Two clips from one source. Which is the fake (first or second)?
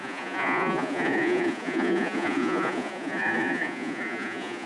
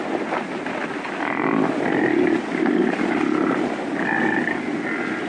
first